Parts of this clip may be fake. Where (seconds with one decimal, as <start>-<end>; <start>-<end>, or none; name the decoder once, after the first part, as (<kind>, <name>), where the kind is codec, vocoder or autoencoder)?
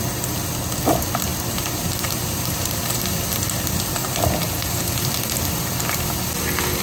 1.3-3.0 (vocoder, BigVGAN v2); 4.0-5.1